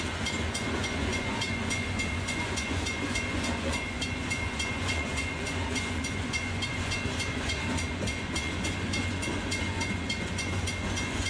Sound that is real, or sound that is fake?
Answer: fake